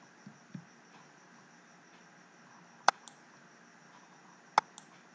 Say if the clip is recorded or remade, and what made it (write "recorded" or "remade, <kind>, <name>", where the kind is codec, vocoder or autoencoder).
recorded